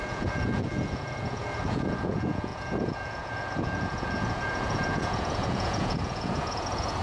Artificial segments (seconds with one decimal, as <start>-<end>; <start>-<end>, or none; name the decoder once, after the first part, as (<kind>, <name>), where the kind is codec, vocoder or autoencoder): 0.0-7.0 (vocoder, Vocos)